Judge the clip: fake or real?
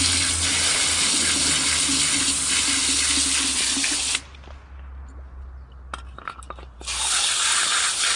real